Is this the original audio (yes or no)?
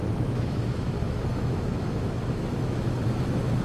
no